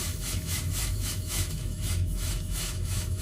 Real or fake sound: fake